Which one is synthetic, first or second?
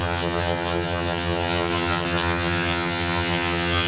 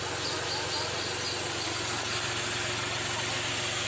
first